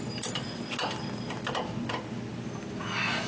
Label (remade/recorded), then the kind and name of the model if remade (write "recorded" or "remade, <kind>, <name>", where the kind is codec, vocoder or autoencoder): recorded